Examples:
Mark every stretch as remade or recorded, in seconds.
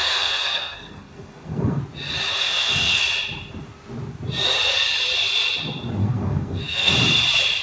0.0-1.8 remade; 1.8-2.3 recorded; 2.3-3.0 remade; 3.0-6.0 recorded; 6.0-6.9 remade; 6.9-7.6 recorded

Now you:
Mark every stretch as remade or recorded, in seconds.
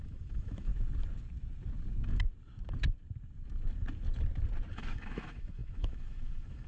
0.0-0.7 remade; 0.7-4.7 recorded; 4.7-6.7 remade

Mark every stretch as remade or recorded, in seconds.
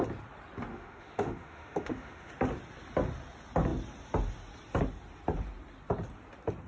0.0-0.7 recorded; 0.7-2.3 remade; 2.3-6.7 recorded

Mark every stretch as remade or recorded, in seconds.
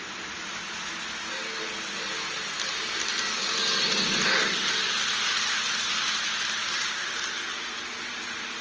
0.0-6.6 recorded; 6.6-7.1 remade; 7.1-8.6 recorded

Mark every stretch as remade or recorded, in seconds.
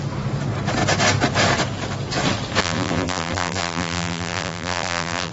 0.0-2.6 recorded; 2.6-5.3 remade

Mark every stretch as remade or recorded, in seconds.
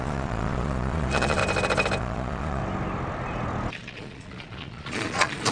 0.0-1.4 remade; 1.4-2.0 recorded; 2.0-2.6 remade; 2.6-3.7 recorded; 3.7-5.5 remade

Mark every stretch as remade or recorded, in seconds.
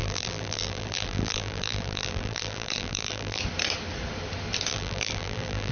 0.0-3.4 remade; 3.4-4.7 recorded; 4.7-5.7 remade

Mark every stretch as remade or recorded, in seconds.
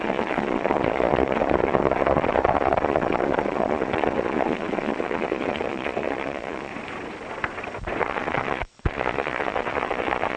0.0-6.7 remade; 6.7-8.0 recorded; 8.0-10.4 remade